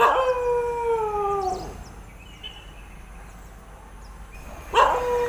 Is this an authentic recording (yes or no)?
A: yes